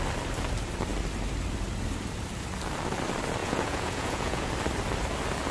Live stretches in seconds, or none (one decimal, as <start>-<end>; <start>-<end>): 0.0-3.4; 4.5-5.5